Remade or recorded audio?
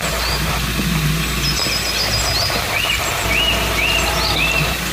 recorded